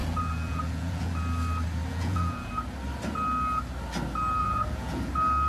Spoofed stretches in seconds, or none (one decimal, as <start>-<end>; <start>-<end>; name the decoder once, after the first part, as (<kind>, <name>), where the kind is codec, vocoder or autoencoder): 0.0-1.1 (vocoder, Vocos); 1.9-2.5; 4.4-5.1